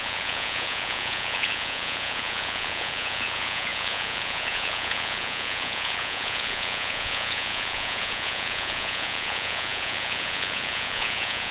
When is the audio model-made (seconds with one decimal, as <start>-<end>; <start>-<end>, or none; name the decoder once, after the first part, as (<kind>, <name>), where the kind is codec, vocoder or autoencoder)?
0.0-11.5 (vocoder, Vocos)